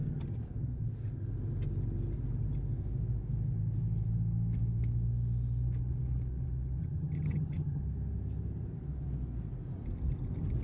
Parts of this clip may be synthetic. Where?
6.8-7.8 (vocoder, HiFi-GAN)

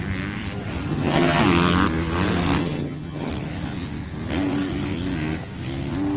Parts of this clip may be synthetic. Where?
0.9-1.4 (vocoder, HiFi-GAN); 2.6-3.3